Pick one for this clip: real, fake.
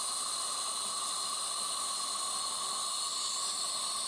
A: real